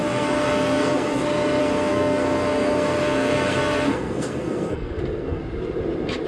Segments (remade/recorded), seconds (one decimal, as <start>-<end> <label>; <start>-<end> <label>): 0.0-1.2 remade; 1.2-1.6 recorded; 1.6-5.4 remade; 5.4-6.3 recorded